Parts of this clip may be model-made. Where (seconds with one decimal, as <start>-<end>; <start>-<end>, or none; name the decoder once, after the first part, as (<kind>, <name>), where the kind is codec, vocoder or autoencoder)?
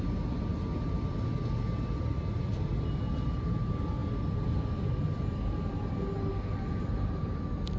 none